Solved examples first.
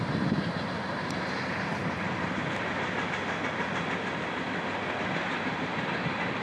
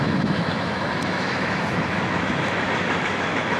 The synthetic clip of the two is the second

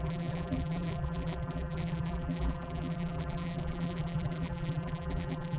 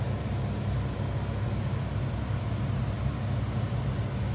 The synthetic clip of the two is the first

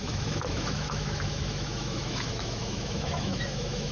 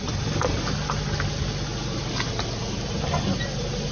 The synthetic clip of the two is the first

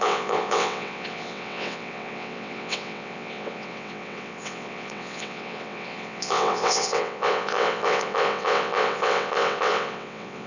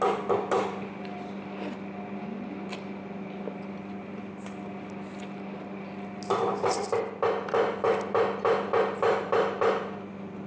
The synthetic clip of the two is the first